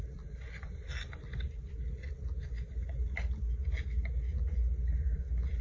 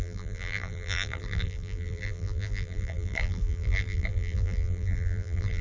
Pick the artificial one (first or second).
second